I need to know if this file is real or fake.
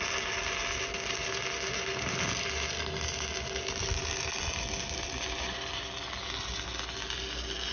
real